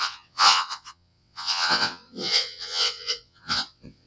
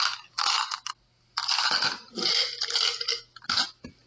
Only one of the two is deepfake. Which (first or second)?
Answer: first